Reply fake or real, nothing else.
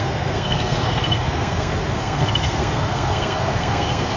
fake